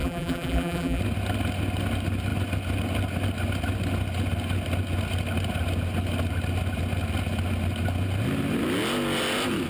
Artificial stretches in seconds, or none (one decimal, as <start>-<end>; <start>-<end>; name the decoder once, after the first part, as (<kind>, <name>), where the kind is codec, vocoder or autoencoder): 0.0-1.0 (vocoder, BigVGAN v2)